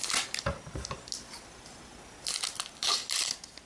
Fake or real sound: real